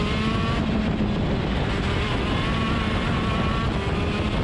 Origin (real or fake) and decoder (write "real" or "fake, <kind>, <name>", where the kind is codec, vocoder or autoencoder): real